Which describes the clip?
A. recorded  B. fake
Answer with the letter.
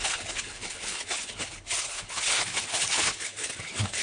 B